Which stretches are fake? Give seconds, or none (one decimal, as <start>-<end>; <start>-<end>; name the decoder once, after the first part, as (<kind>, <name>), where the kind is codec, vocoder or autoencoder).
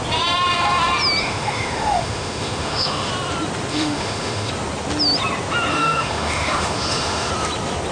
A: 1.2-3.1 (autoencoder, DAC-VAE); 3.7-4.5; 5.7-7.3